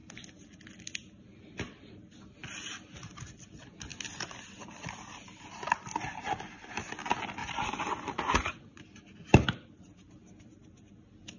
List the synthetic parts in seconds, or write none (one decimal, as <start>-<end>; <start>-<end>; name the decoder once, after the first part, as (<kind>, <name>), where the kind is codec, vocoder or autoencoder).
7.4-8.8 (vocoder, Vocos)